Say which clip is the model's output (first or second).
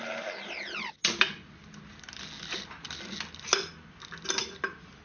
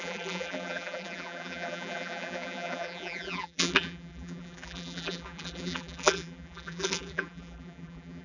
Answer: second